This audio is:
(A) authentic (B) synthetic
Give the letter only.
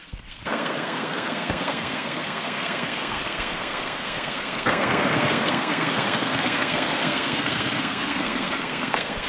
B